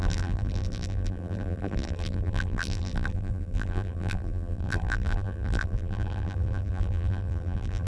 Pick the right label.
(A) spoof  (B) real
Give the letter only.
A